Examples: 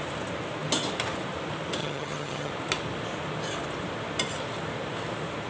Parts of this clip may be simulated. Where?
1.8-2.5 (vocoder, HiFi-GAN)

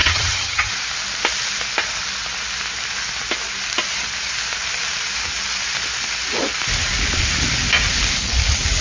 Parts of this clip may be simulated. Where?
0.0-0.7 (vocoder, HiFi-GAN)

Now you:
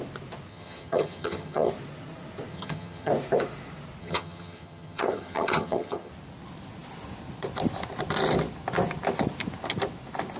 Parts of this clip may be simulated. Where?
0.5-1.7 (vocoder, HiFi-GAN); 2.5-3.1; 4.0-6.1

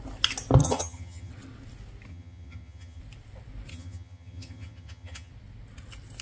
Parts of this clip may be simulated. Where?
0.6-1.3 (vocoder, HiFi-GAN); 2.1-3.0; 3.7-5.3

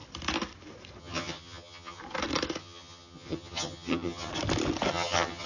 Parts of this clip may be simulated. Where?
1.0-2.0 (vocoder, HiFi-GAN); 2.6-4.3; 4.9-5.5